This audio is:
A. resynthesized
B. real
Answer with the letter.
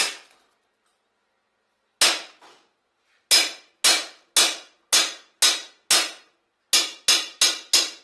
B